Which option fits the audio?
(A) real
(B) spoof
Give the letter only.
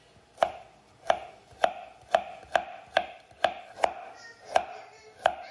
A